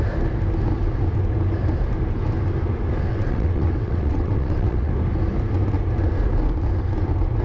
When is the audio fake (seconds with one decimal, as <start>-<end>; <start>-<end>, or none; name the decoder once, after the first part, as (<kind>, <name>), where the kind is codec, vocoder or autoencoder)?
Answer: 3.1-4.9 (vocoder, WaveNeXt)